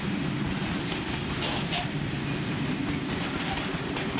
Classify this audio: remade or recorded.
recorded